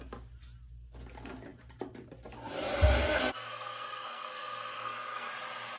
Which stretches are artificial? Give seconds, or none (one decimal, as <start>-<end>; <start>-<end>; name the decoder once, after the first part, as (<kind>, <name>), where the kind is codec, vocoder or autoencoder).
3.0-5.3 (codec, SNAC)